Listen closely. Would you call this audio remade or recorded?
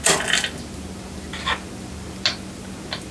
recorded